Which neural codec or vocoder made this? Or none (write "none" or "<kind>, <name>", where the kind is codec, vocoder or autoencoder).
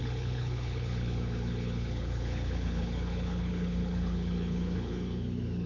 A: codec, HILCodec